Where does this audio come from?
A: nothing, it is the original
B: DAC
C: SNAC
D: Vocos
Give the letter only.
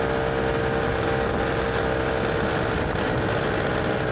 A